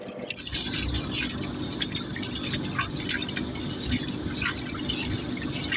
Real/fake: real